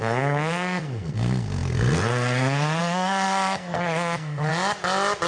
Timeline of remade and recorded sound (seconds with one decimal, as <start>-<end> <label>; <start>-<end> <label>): 0.0-4.5 remade; 4.5-5.3 recorded

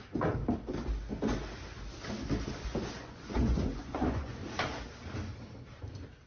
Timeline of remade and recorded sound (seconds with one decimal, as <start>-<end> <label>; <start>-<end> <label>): 0.0-0.4 remade; 0.4-2.8 recorded; 2.8-4.4 remade; 4.4-6.3 recorded

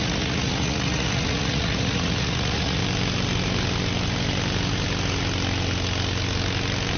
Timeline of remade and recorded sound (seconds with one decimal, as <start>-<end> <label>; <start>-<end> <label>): 0.0-2.8 remade; 2.8-7.0 recorded

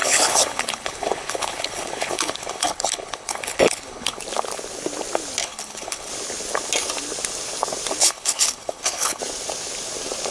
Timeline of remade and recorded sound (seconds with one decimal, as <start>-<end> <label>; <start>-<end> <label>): 0.0-4.2 remade; 4.2-5.4 recorded; 5.4-6.1 remade; 6.1-8.0 recorded; 8.0-9.2 remade; 9.2-10.3 recorded

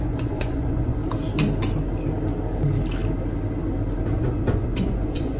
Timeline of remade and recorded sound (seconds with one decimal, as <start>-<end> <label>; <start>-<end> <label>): 0.0-1.0 remade; 1.0-4.2 recorded; 4.2-5.4 remade